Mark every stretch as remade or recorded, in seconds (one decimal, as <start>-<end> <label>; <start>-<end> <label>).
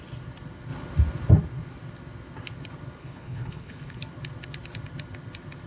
0.0-3.0 recorded; 3.0-4.0 remade; 4.0-5.7 recorded